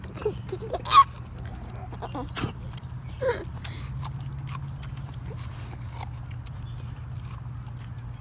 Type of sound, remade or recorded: recorded